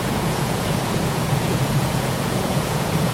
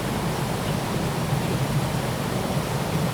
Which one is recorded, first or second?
second